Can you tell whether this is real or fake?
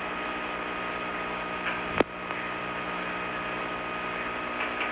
real